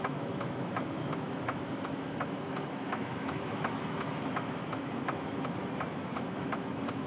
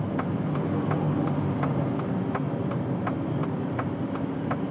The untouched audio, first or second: second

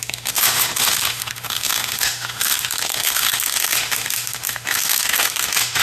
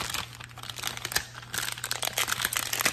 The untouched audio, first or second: second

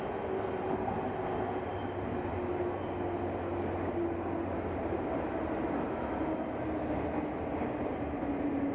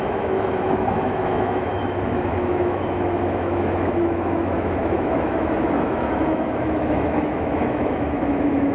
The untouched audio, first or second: first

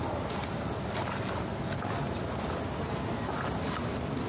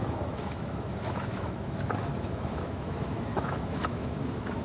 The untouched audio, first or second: first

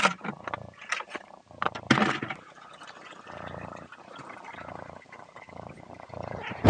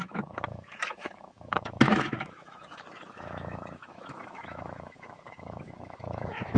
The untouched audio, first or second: first